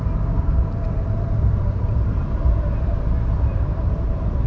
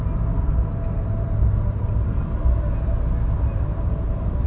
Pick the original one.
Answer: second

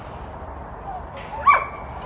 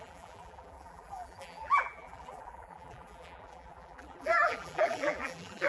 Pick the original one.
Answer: first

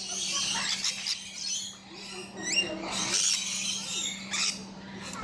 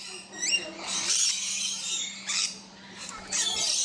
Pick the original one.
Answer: first